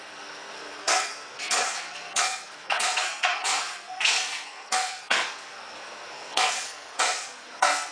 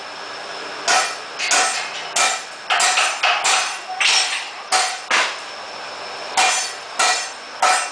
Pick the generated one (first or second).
first